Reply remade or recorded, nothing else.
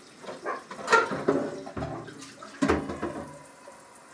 recorded